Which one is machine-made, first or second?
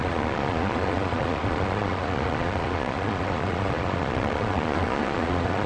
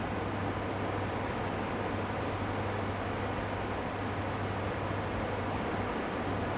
first